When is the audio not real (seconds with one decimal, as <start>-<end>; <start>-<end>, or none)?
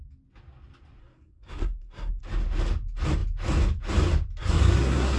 1.0-2.2; 4.4-5.2